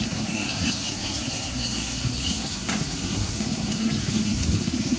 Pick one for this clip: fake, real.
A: fake